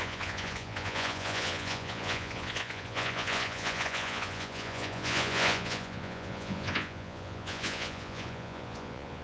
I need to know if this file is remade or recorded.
remade